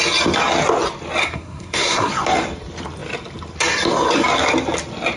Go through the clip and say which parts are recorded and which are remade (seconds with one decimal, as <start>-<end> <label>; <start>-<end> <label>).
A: 0.0-1.2 recorded; 1.2-2.1 remade; 2.1-5.2 recorded